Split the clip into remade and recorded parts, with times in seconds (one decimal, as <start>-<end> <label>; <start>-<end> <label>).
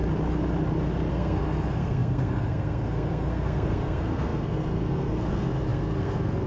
0.0-1.1 recorded; 1.1-6.5 remade